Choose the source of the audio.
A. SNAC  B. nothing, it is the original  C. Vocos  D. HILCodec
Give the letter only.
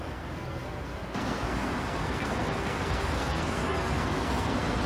A